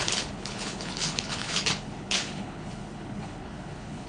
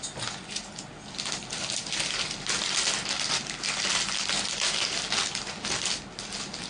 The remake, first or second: first